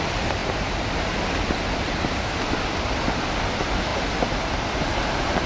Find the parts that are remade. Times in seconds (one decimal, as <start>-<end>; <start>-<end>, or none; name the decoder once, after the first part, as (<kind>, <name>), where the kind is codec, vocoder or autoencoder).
none